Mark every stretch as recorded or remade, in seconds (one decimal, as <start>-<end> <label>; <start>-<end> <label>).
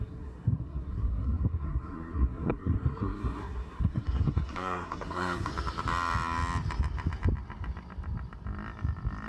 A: 0.0-5.5 remade; 5.5-9.3 recorded